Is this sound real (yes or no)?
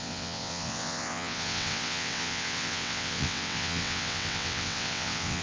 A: no